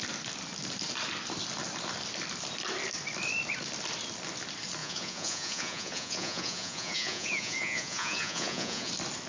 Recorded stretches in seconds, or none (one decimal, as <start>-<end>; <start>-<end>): 0.0-4.8; 8.9-9.3